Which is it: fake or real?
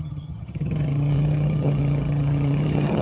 fake